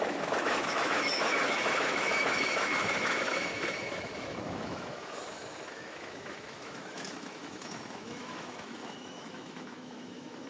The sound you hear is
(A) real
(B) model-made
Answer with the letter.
B